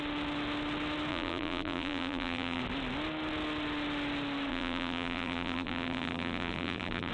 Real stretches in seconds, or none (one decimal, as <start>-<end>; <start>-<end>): 0.0-1.1; 2.6-4.5